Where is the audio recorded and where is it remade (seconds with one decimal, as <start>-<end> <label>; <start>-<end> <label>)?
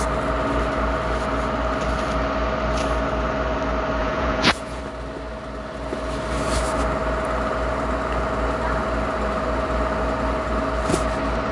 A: 0.0-4.0 recorded; 4.0-4.8 remade; 4.8-11.5 recorded